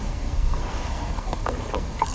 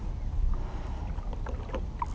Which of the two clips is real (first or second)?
second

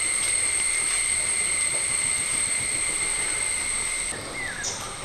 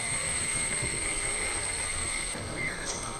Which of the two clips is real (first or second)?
first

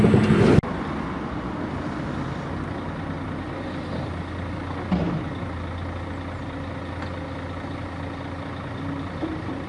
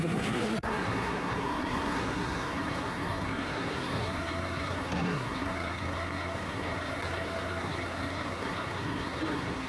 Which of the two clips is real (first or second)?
first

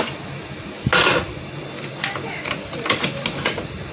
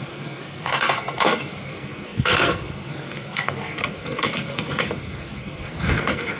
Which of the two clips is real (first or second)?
first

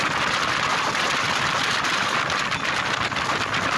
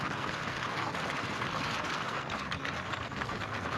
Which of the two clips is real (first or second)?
first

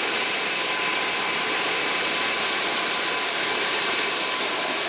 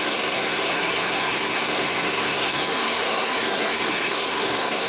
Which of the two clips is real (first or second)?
first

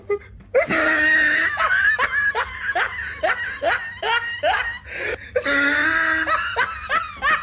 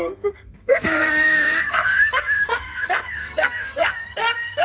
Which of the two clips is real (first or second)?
first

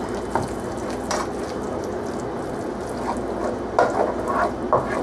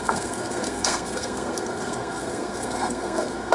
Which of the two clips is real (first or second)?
first